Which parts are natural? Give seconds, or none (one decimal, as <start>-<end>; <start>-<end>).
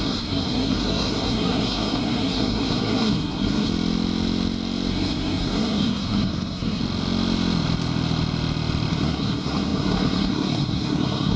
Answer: 3.7-4.9; 6.8-8.9